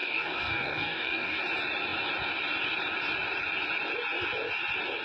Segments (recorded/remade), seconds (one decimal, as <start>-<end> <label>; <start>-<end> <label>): 0.0-1.4 remade; 1.4-5.0 recorded